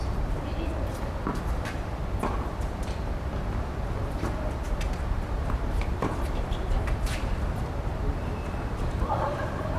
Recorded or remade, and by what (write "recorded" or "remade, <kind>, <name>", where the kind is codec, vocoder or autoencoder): remade, vocoder, BigVGAN v2